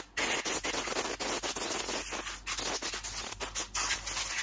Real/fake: real